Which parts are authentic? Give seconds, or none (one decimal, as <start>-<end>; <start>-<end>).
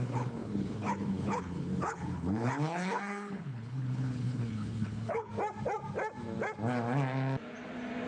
5.3-8.1